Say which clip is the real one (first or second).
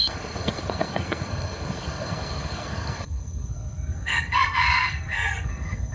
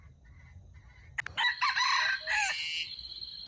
second